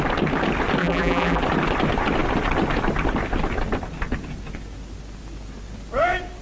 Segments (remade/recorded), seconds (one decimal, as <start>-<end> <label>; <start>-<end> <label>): 0.0-0.8 recorded; 0.8-1.4 remade; 1.4-6.4 recorded